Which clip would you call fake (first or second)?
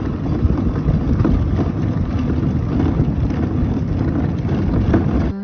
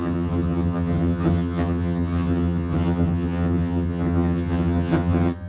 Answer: second